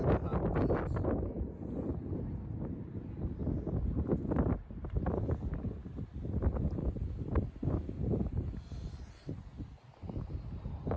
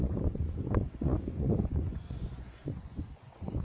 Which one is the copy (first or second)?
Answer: second